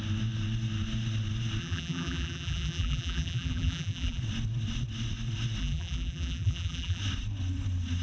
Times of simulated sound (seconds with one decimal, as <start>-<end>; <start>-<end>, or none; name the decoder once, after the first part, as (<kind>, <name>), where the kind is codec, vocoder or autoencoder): 1.6-4.2 (vocoder, BigVGAN v2); 5.6-7.0